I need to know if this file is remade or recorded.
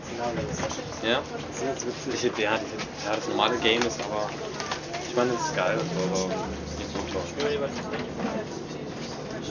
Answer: recorded